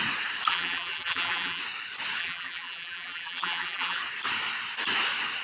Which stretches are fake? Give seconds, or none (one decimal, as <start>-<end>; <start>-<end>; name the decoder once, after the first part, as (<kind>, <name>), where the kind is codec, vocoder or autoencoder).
0.5-1.6 (vocoder, BigVGAN v2); 2.2-4.0